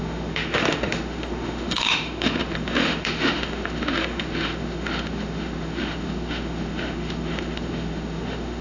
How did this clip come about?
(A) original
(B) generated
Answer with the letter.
B